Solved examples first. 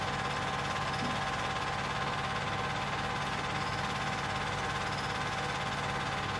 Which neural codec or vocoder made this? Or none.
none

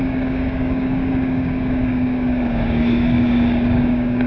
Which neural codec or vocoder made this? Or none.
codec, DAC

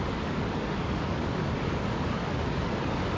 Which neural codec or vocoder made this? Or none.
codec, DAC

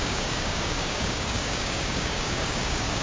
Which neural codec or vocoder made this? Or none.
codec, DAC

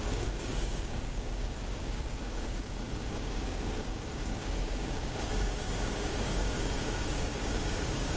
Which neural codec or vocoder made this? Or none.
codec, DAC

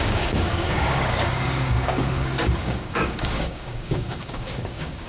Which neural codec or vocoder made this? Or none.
codec, DAC